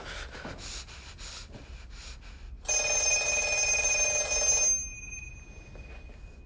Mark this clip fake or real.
real